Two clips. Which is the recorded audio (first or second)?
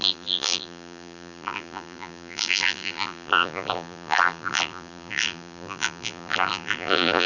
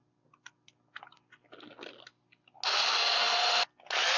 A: second